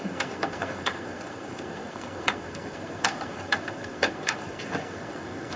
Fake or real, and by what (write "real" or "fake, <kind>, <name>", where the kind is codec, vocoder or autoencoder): fake, codec, SNAC